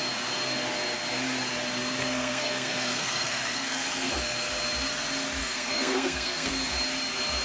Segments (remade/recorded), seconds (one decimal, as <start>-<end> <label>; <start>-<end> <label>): 0.0-2.0 recorded; 2.0-4.1 remade; 4.1-5.4 recorded; 5.4-6.5 remade; 6.5-7.4 recorded

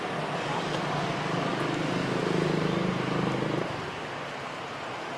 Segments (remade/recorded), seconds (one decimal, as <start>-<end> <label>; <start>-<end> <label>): 0.0-5.2 recorded

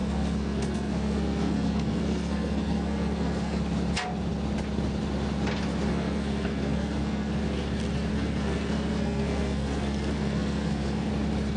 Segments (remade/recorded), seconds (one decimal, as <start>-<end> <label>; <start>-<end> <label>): 0.0-3.6 remade; 3.6-5.9 recorded; 5.9-7.4 remade; 7.4-8.1 recorded; 8.1-11.1 remade; 11.1-11.6 recorded

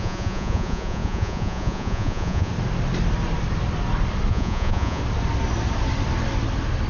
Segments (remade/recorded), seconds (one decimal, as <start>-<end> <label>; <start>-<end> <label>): 0.0-2.5 remade; 2.5-4.3 recorded; 4.3-5.0 remade; 5.0-6.9 recorded

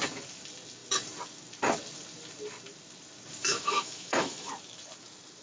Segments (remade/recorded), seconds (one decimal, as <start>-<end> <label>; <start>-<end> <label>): 0.0-3.4 recorded; 3.4-4.5 remade; 4.5-5.4 recorded

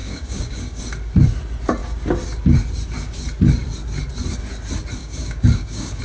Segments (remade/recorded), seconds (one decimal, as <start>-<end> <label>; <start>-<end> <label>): 0.0-0.8 remade; 0.8-5.0 recorded; 5.0-6.0 remade